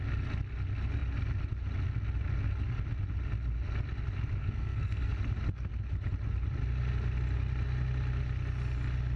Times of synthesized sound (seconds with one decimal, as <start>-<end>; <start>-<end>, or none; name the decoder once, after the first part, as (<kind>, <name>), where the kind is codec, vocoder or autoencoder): 4.4-5.1 (codec, SNAC)